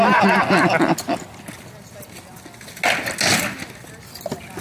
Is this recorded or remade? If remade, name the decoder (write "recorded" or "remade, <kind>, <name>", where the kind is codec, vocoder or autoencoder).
recorded